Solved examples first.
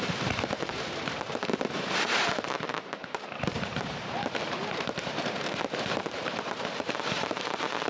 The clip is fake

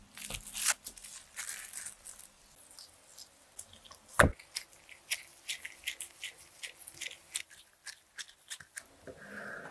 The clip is real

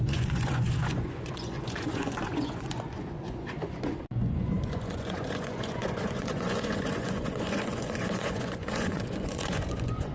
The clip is fake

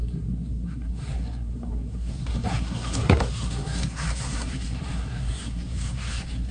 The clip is fake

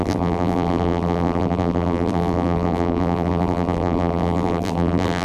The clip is fake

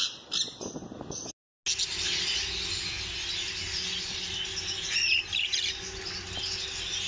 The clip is real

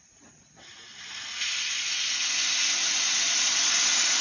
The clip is real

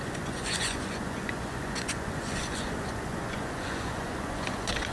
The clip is fake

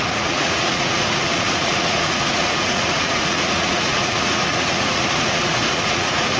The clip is fake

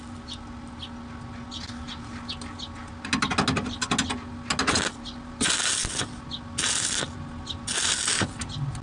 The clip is real